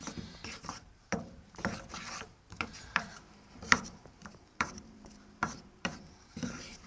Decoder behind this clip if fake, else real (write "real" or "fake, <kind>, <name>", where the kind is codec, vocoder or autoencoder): fake, vocoder, BigVGAN v2